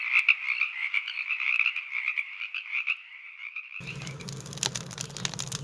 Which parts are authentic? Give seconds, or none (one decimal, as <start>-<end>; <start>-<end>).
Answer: 0.0-0.8; 4.2-5.6